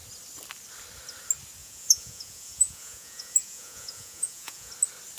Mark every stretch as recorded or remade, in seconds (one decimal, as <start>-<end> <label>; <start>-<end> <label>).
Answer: 0.0-1.6 recorded; 1.6-4.7 remade; 4.7-5.2 recorded